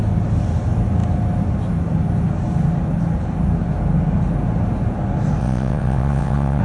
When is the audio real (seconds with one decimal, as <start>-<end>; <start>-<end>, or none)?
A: 0.0-5.4